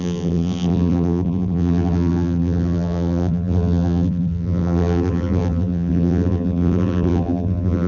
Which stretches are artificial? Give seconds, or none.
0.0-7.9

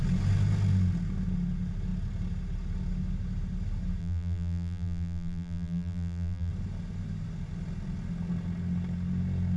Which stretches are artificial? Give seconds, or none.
4.0-6.5

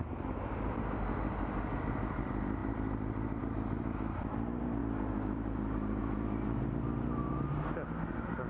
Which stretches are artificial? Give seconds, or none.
4.8-6.0

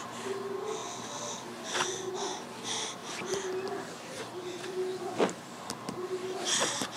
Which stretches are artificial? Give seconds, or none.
3.0-4.2; 4.9-5.7

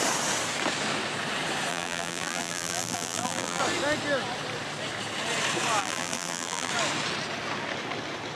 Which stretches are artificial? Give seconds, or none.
1.7-3.6; 5.8-6.7

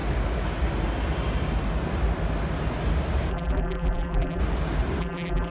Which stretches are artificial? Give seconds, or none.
3.3-4.4; 5.0-5.5